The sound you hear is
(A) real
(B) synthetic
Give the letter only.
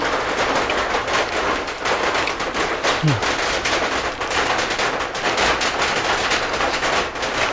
A